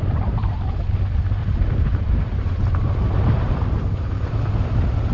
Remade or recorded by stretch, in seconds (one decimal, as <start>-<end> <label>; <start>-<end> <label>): 0.0-1.4 recorded; 1.4-4.4 remade; 4.4-5.1 recorded